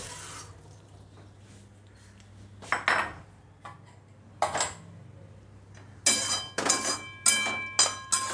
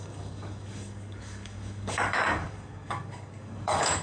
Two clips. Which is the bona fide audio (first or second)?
first